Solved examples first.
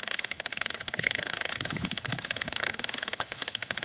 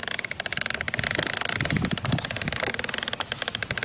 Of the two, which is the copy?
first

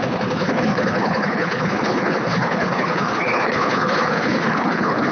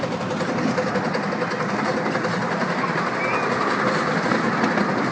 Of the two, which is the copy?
first